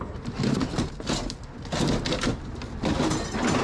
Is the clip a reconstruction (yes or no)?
no